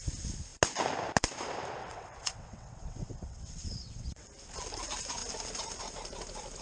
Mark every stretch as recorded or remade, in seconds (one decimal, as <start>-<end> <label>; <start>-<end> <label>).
0.0-1.8 recorded; 1.8-4.3 remade; 4.3-6.6 recorded